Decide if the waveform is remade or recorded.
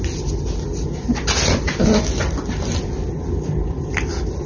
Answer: recorded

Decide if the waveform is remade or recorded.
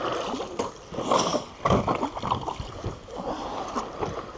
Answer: remade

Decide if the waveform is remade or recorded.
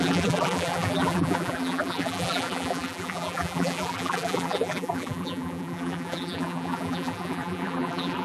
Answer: remade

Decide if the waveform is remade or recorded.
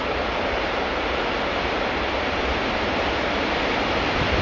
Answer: recorded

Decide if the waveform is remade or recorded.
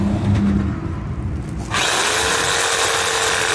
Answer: recorded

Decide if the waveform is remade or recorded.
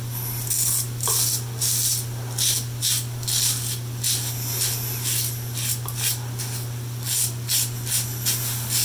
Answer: recorded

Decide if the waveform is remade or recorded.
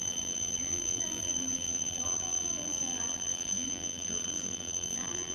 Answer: remade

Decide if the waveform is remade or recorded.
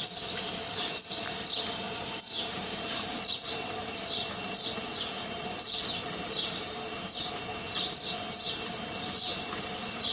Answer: remade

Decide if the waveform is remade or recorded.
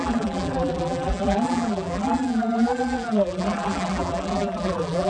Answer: remade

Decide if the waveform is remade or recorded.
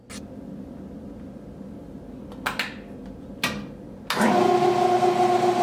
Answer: recorded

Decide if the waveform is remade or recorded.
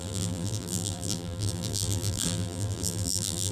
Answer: remade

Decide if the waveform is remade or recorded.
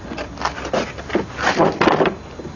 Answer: recorded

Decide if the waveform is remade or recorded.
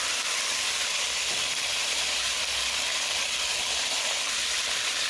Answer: recorded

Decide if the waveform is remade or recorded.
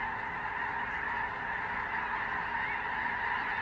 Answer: recorded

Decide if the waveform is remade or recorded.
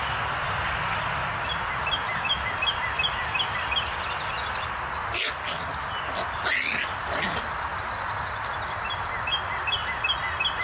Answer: recorded